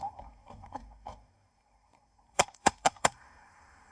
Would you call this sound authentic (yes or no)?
no